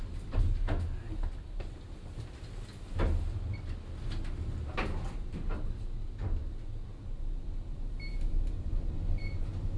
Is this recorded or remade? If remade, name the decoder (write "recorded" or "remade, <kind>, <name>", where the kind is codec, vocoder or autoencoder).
recorded